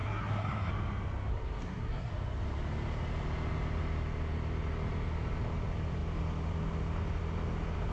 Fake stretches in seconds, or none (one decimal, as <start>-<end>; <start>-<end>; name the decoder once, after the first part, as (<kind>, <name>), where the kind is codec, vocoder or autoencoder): 0.0-0.7 (codec, SNAC); 1.3-2.1